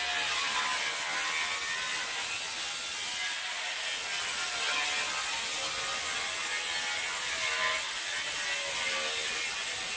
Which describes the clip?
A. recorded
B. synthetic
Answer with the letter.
A